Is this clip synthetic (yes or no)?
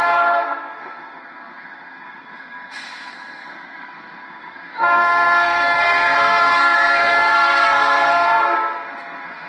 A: yes